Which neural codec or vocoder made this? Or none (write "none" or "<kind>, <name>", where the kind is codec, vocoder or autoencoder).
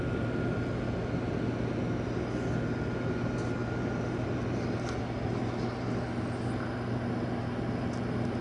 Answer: none